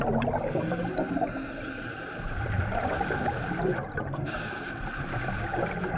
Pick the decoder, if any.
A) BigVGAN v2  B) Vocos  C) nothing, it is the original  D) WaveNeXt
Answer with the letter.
A